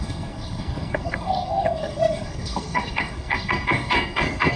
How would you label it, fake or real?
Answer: fake